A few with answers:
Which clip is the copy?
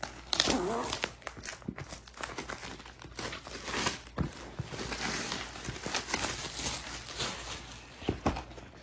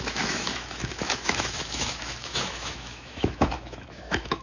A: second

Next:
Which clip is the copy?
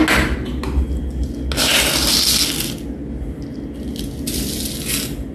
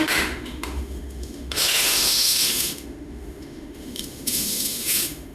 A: second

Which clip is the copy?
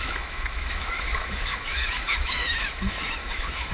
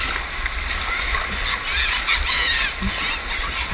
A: first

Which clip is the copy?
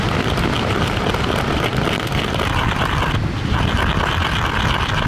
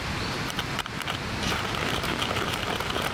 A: second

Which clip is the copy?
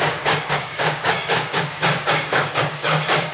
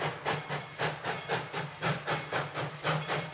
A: first